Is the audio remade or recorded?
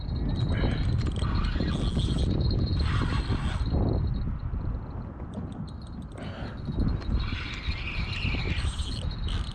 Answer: recorded